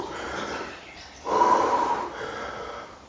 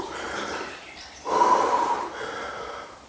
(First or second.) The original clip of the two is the first